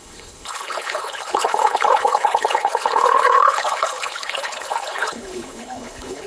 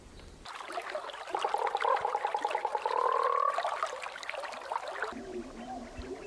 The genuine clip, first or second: second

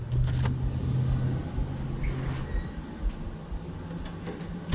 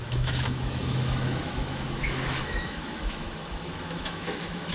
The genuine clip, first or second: first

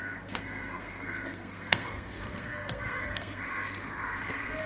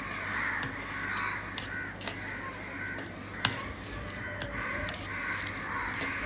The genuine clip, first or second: second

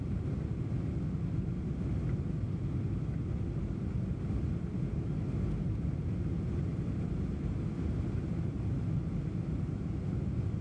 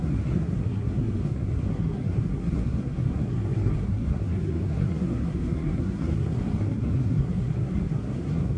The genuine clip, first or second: first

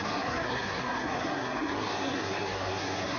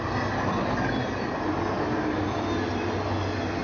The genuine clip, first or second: second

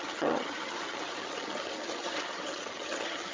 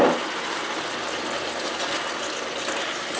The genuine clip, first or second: second